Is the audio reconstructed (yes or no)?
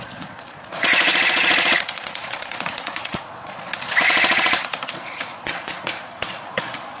yes